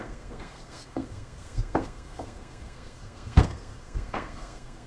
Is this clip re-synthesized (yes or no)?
yes